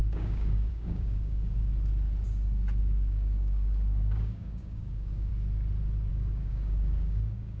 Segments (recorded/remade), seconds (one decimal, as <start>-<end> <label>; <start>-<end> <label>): 0.0-1.7 remade; 1.7-2.8 recorded; 2.8-5.3 remade; 5.3-6.1 recorded; 6.1-7.6 remade